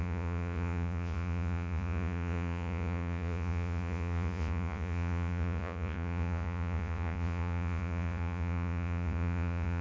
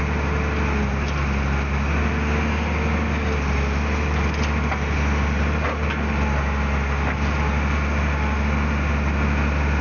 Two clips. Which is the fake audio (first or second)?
first